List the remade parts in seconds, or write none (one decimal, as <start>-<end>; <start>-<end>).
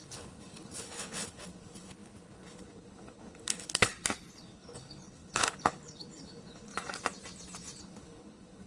0.0-3.9; 4.4-6.7; 7.8-8.7